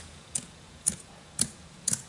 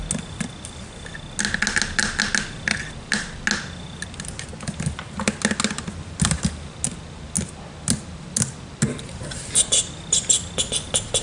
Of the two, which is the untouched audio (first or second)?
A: second